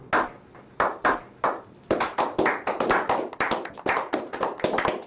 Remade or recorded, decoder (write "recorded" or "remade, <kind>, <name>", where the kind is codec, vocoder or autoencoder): recorded